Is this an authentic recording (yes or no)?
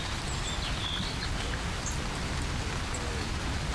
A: yes